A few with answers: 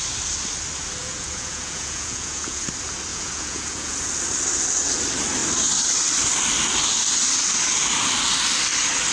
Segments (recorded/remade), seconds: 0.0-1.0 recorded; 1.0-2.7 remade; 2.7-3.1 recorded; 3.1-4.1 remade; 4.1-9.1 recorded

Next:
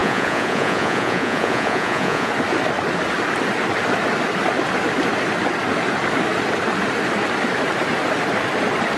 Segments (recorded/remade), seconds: 0.0-2.3 remade; 2.3-9.0 recorded

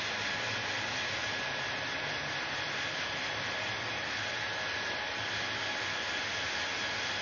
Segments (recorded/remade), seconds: 0.0-7.2 recorded

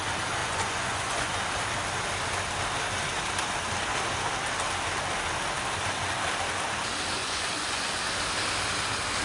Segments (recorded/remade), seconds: 0.0-0.4 recorded; 0.4-1.4 remade; 1.4-7.2 recorded; 7.2-8.0 remade; 8.0-9.2 recorded